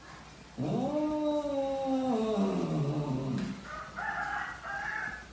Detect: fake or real real